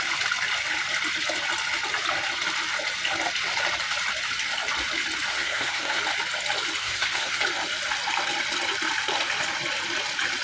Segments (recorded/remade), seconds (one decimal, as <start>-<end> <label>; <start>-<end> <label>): 0.0-5.3 recorded; 5.3-6.0 remade; 6.0-6.8 recorded; 6.8-7.4 remade; 7.4-10.4 recorded